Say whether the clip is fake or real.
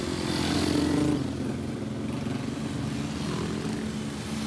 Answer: real